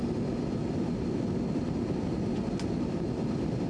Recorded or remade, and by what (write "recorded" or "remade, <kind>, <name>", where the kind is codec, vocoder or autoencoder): recorded